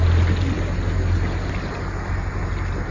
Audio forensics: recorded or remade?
recorded